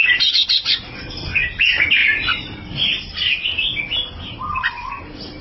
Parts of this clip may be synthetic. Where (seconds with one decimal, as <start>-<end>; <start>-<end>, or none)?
none